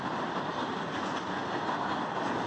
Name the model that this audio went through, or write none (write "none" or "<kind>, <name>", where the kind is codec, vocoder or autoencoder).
none